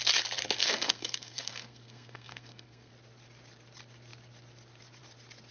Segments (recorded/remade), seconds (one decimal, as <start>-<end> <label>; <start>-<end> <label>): 0.0-0.6 recorded; 0.6-2.9 remade; 2.9-5.5 recorded